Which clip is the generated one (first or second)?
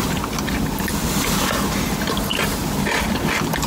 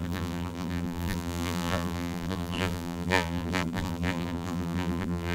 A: second